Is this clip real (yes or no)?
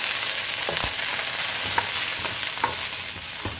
yes